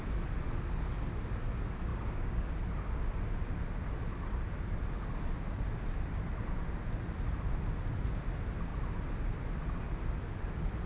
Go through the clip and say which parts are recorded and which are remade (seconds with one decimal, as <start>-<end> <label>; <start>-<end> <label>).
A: 0.0-1.9 recorded; 1.9-2.5 remade; 2.5-10.9 recorded

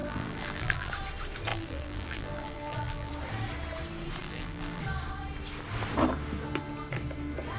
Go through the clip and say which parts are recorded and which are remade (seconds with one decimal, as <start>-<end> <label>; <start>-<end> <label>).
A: 0.0-0.9 remade; 0.9-1.5 recorded; 1.5-3.1 remade; 3.1-4.2 recorded; 4.2-4.8 remade; 4.8-7.6 recorded

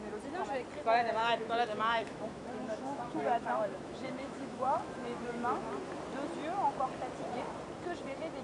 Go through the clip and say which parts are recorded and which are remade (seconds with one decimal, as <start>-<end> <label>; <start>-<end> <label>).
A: 0.0-1.2 recorded; 1.2-5.7 remade; 5.7-8.4 recorded

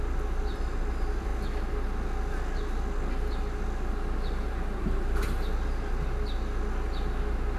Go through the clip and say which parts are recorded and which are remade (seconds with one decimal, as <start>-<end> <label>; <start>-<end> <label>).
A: 0.0-7.6 recorded

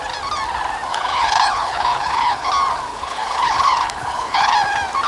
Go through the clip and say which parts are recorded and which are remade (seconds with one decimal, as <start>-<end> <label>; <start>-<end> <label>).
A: 0.0-0.9 recorded; 0.9-2.5 remade; 2.5-2.9 recorded; 2.9-4.5 remade; 4.5-5.1 recorded

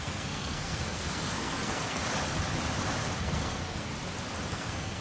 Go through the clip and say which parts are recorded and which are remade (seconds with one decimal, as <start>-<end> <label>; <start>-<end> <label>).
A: 0.0-2.0 remade; 2.0-3.2 recorded; 3.2-3.9 remade; 3.9-4.5 recorded; 4.5-5.0 remade

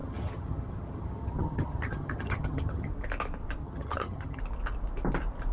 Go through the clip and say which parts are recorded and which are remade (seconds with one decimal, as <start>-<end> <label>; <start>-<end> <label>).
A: 0.0-2.9 remade; 2.9-3.6 recorded; 3.6-4.4 remade; 4.4-5.5 recorded